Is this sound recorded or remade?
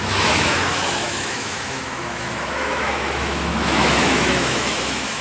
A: remade